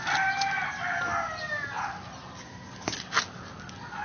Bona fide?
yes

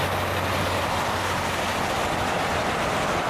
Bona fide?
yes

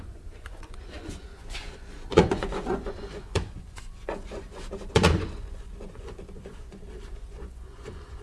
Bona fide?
no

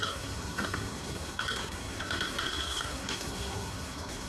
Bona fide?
no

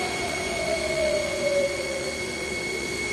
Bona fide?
no